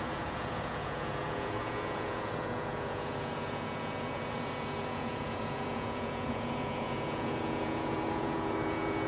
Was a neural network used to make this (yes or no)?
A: yes